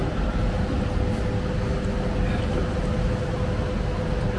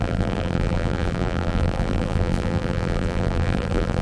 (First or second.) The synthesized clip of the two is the second